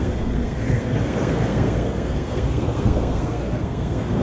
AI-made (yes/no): yes